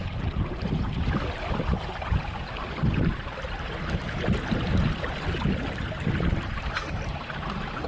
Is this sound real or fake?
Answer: fake